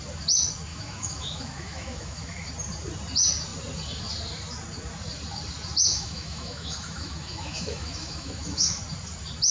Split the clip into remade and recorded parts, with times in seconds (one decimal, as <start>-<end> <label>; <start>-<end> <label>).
0.0-0.7 recorded; 0.7-2.5 remade; 2.5-5.9 recorded; 5.9-8.8 remade; 8.8-9.5 recorded